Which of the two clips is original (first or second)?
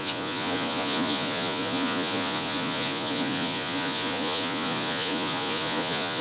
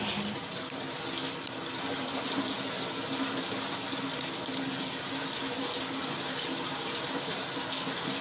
second